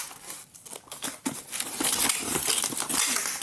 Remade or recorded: recorded